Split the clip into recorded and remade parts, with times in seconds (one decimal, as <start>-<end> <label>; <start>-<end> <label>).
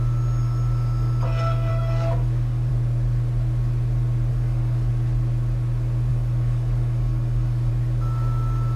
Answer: 0.0-1.7 recorded; 1.7-2.7 remade; 2.7-4.3 recorded; 4.3-4.9 remade; 4.9-6.1 recorded; 6.1-7.7 remade; 7.7-8.8 recorded